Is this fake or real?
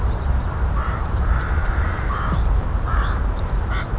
fake